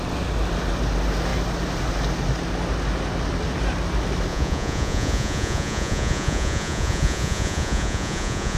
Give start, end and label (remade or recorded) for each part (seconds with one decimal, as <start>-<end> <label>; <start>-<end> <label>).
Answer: 0.0-4.3 recorded; 4.3-8.6 remade